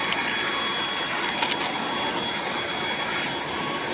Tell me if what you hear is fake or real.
real